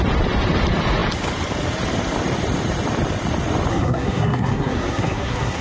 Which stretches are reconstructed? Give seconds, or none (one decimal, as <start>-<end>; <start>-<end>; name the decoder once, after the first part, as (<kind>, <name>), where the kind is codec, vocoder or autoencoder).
3.7-5.6 (codec, SNAC)